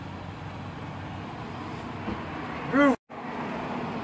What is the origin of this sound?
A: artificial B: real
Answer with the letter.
B